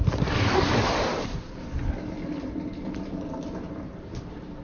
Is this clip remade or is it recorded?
recorded